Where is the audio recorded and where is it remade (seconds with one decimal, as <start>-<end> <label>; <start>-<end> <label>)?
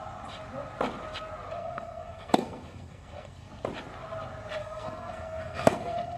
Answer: 0.0-1.6 recorded; 1.6-3.5 remade; 3.5-4.6 recorded; 4.6-6.2 remade